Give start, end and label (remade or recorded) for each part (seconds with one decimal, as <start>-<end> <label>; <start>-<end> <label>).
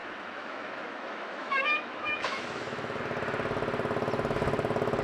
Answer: 0.0-3.0 remade; 3.0-5.0 recorded